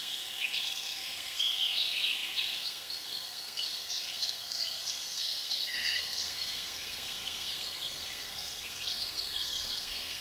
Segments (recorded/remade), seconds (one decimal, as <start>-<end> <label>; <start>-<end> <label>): 0.0-10.2 remade